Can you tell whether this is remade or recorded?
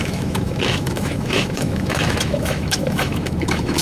remade